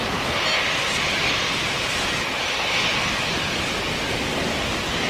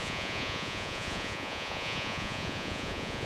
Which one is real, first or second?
first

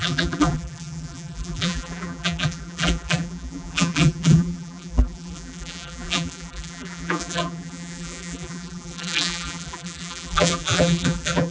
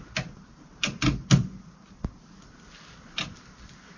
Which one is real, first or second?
second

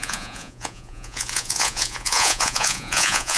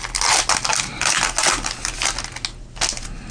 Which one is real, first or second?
second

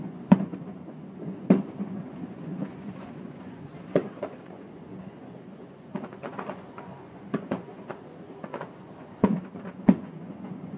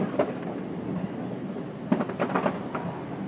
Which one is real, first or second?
second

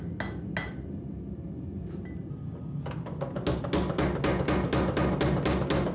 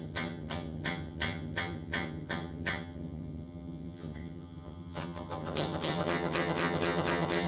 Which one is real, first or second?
first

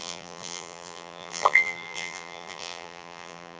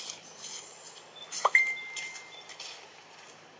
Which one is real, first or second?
second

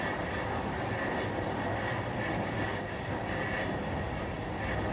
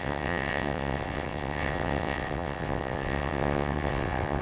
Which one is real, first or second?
first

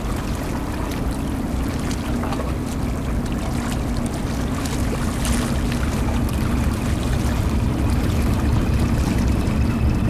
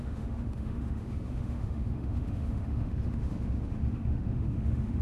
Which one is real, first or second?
first